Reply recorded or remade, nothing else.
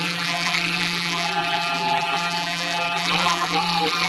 remade